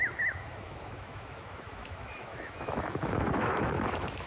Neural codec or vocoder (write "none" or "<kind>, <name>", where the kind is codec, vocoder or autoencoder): autoencoder, DAC-VAE